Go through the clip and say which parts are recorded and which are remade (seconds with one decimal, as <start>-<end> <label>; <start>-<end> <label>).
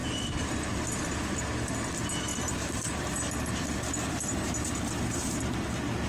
0.0-2.3 recorded; 2.3-3.1 remade; 3.1-6.1 recorded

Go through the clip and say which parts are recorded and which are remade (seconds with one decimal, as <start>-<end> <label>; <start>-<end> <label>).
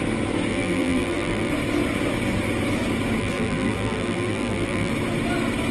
0.0-0.5 recorded; 0.5-1.5 remade; 1.5-3.2 recorded; 3.2-4.9 remade; 4.9-5.7 recorded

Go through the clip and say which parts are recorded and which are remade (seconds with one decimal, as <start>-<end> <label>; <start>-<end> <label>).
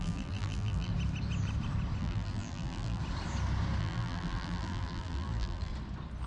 0.0-0.9 remade; 0.9-2.0 recorded; 2.0-3.0 remade; 3.0-3.8 recorded; 3.8-5.7 remade; 5.7-6.3 recorded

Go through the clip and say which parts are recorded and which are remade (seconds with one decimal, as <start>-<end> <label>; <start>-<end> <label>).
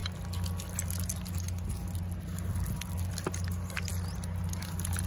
0.0-5.1 recorded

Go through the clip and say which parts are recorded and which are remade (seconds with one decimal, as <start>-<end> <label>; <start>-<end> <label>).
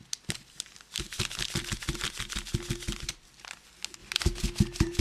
0.0-5.0 recorded